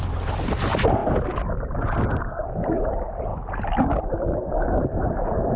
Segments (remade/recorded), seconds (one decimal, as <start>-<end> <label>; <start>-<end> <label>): 0.0-5.6 recorded